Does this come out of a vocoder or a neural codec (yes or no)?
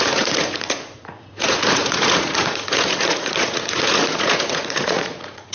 yes